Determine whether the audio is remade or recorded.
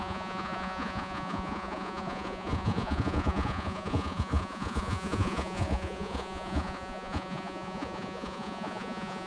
remade